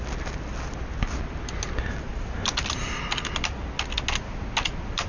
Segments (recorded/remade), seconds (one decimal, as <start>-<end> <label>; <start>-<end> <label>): 0.0-5.1 recorded

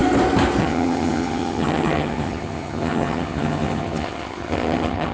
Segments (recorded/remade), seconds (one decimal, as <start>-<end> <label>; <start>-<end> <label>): 0.0-0.6 recorded; 0.6-5.1 remade